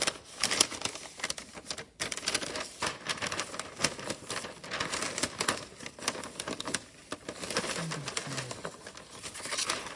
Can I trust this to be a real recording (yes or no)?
yes